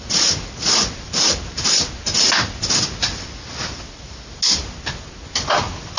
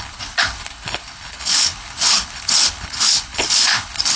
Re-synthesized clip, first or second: second